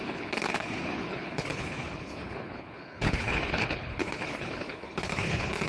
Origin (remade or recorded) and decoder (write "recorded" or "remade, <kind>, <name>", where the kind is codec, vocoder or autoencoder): remade, codec, HILCodec